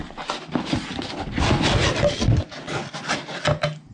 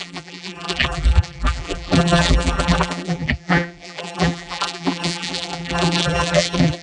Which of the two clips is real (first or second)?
first